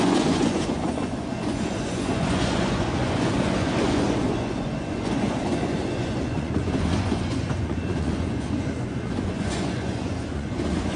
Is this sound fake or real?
fake